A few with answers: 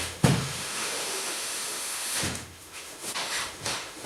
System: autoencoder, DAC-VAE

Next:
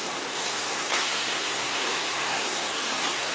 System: codec, SNAC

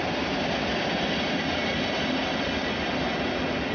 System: none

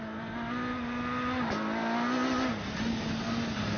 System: none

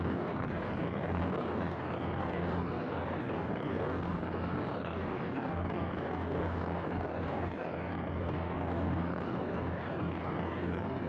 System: codec, DAC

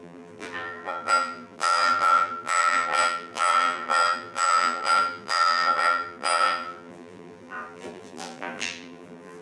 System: vocoder, BigVGAN v2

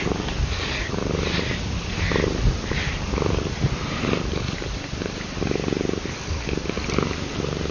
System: none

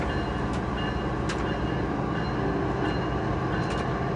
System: none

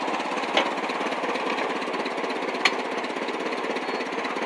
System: none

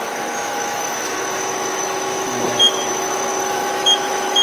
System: autoencoder, DAC-VAE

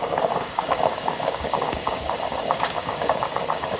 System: codec, DAC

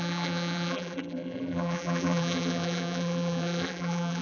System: vocoder, BigVGAN v2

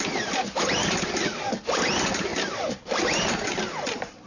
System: none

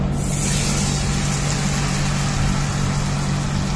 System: none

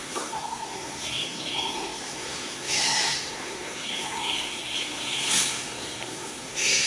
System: codec, SNAC